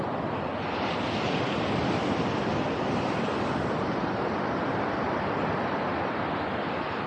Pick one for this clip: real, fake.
real